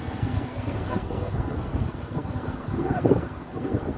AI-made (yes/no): yes